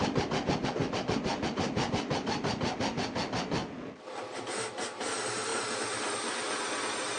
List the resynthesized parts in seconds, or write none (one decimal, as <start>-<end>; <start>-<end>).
5.5-6.0